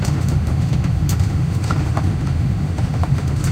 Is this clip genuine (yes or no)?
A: no